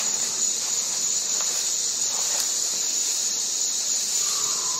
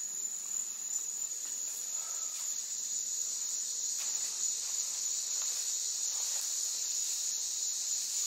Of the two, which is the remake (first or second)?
first